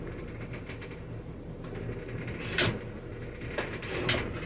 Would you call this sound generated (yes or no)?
no